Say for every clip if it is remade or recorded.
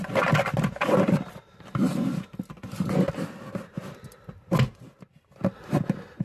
recorded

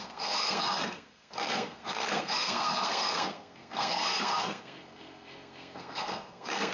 remade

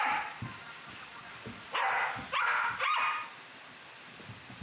recorded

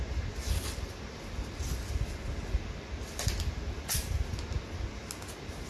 recorded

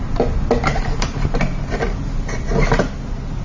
recorded